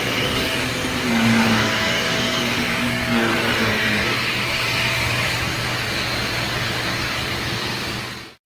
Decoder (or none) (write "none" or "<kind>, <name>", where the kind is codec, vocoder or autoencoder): codec, DAC